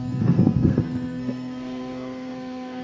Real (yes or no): no